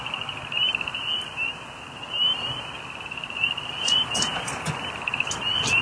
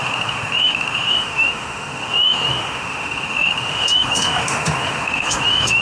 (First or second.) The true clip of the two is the first